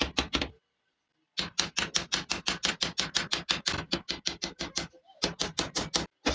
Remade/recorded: recorded